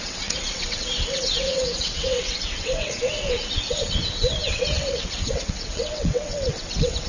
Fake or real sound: fake